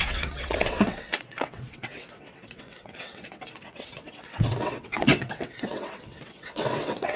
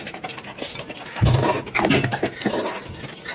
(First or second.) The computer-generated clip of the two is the first